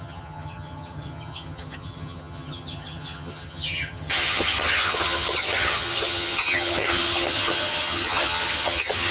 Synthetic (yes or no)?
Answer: yes